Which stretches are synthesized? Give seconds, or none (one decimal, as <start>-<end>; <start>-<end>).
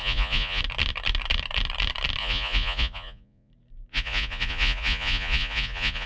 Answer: 0.0-0.6; 2.2-3.5; 3.9-6.1